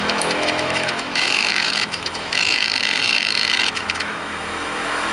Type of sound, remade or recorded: remade